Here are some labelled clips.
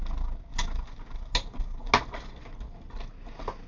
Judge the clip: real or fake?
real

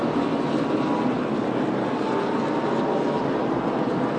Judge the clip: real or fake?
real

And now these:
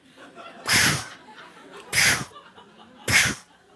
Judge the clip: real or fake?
fake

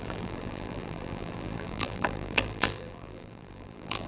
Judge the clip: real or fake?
fake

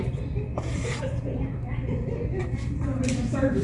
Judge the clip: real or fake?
fake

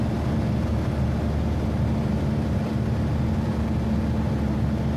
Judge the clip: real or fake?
real